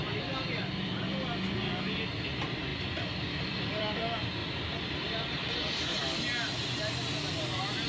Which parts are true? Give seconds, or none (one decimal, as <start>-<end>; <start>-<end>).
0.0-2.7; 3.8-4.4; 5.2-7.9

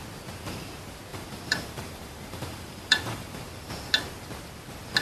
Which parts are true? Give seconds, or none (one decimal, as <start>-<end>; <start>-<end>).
0.0-1.1; 3.7-5.0

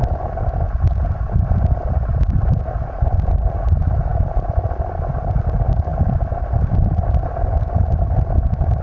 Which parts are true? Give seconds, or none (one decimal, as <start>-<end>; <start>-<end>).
0.0-8.8

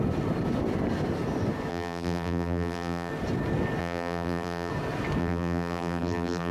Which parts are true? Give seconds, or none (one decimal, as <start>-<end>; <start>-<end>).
0.0-1.7; 3.1-3.8; 4.7-5.2